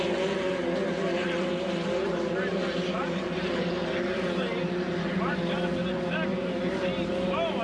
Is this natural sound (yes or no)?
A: yes